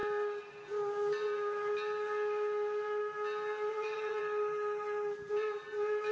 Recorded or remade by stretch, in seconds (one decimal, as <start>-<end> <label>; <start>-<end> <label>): 0.0-3.7 recorded; 3.7-4.2 remade; 4.2-6.1 recorded